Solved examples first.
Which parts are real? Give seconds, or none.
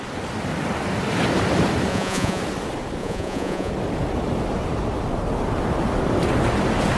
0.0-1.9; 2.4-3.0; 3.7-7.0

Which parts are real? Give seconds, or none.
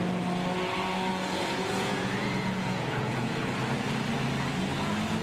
0.0-1.1; 3.4-5.2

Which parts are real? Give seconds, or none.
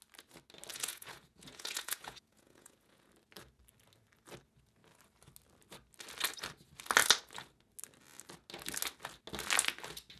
0.0-0.7; 3.1-10.2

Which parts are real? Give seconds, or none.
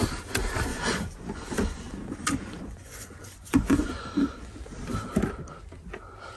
0.0-0.7; 4.5-6.4